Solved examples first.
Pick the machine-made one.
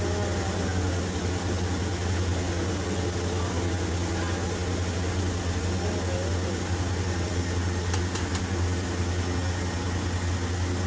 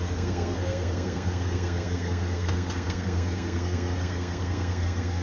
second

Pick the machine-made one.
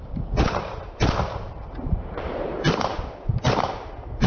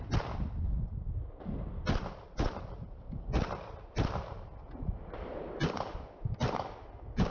first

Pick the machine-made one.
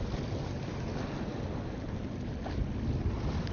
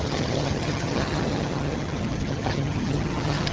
second